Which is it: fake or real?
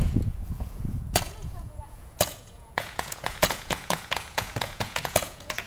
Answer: fake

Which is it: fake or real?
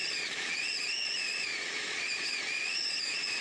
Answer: fake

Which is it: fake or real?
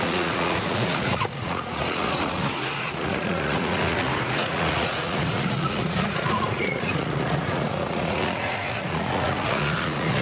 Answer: fake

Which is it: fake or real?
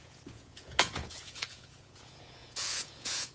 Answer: fake